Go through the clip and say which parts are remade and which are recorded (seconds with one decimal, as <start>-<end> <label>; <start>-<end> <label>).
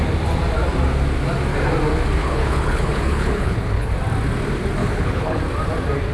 0.0-2.2 recorded; 2.2-3.9 remade; 3.9-4.8 recorded; 4.8-5.4 remade; 5.4-6.1 recorded